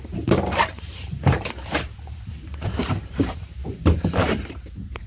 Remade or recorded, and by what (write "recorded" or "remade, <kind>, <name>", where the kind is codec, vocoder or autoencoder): remade, vocoder, BigVGAN v2